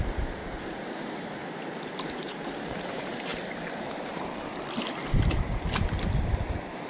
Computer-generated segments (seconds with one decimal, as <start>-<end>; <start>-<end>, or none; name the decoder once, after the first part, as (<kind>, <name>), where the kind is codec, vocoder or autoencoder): 0.0-0.4 (vocoder, BigVGAN v2); 1.0-1.4; 1.9-3.3; 6.1-6.9